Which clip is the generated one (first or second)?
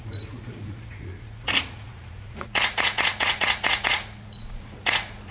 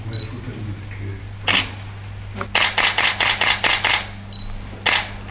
first